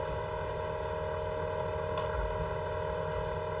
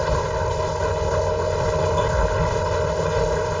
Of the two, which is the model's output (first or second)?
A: second